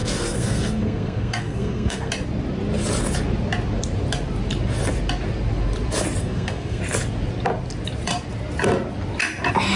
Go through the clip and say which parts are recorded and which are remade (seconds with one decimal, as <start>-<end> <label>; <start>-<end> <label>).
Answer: 0.0-2.1 remade; 2.1-6.2 recorded; 6.2-6.8 remade; 6.8-9.8 recorded